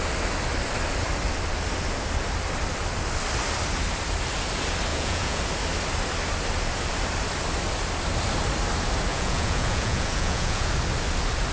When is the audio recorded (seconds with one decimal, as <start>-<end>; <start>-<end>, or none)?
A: 0.0-4.9; 5.4-9.1; 10.7-11.5